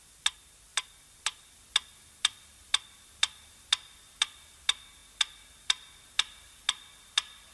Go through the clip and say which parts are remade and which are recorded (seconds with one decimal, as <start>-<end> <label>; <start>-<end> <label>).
0.0-7.5 recorded